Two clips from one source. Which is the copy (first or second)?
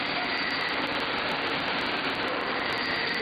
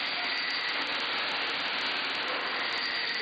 first